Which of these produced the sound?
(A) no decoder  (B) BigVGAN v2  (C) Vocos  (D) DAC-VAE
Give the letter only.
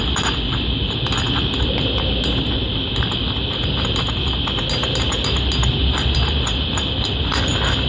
A